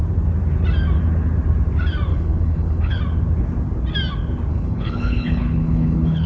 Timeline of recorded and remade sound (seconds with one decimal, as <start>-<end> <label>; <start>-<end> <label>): 0.0-2.1 recorded; 2.1-3.0 remade; 3.0-4.5 recorded; 4.5-6.3 remade